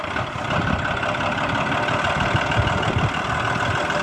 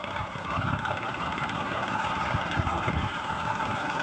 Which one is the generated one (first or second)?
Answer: second